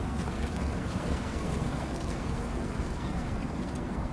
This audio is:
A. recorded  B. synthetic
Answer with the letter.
B